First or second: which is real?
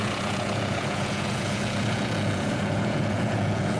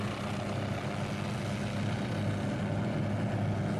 second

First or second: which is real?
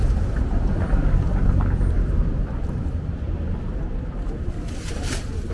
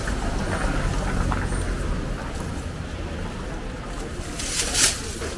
second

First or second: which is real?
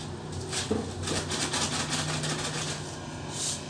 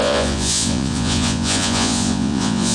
first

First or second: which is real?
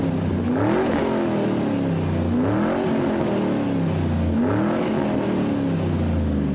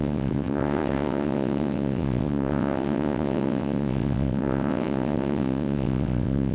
first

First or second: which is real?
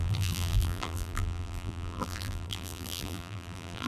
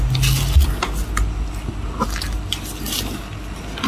second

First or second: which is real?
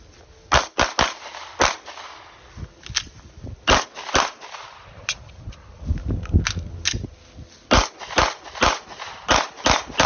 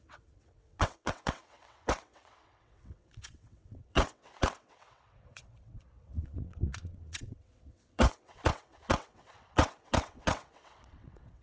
first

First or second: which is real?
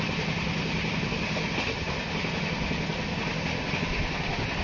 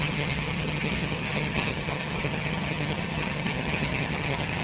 first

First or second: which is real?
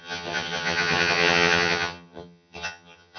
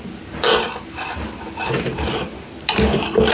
second